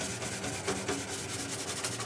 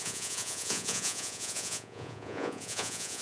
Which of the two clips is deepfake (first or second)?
second